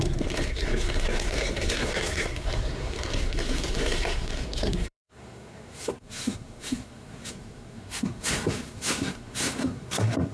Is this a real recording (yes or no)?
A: no